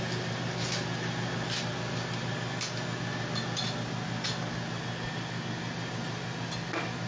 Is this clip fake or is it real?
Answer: real